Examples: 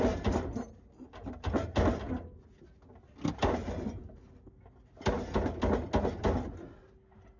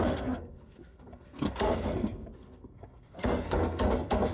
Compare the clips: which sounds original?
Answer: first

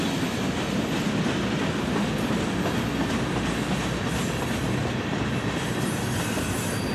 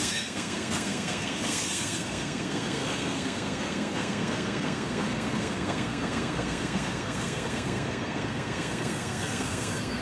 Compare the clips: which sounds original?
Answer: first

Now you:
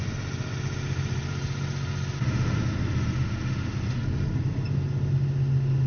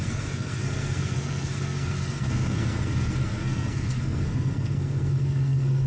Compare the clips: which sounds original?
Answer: first